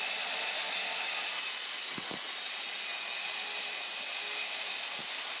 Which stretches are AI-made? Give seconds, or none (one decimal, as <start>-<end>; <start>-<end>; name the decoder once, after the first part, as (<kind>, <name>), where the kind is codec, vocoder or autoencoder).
0.0-1.8 (vocoder, BigVGAN v2); 5.0-5.4